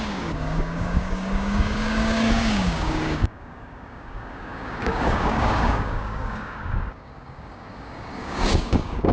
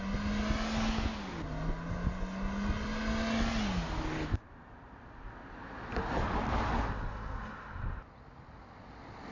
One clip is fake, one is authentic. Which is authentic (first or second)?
second